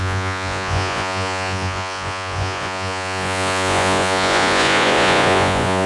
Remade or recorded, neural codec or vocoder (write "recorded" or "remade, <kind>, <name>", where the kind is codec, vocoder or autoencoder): remade, vocoder, Vocos